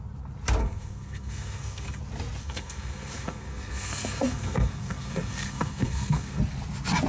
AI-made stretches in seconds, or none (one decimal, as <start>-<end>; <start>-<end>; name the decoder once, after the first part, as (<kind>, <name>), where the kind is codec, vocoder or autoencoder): 0.6-2.0 (codec, SNAC); 2.4-6.4